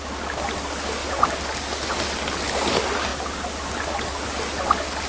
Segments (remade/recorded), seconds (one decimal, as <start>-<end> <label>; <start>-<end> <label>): 0.0-5.1 recorded